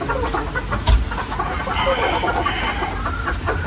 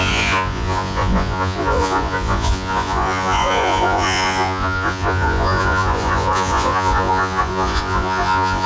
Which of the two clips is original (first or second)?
first